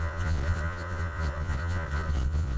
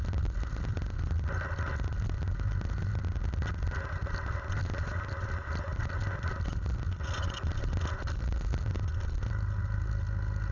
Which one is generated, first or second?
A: first